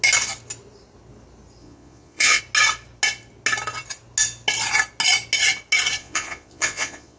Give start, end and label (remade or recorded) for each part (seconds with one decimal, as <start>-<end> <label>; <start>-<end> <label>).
0.0-1.6 recorded; 1.6-2.4 remade; 2.4-6.0 recorded; 6.0-7.2 remade